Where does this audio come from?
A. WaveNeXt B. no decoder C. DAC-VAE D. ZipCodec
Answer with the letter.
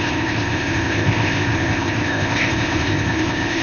D